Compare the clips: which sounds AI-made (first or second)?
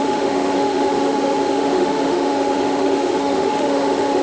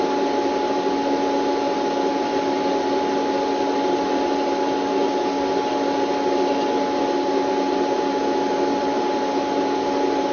first